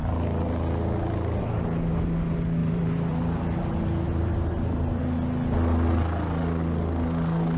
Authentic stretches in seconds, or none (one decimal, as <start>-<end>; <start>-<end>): 0.0-2.6; 5.0-7.6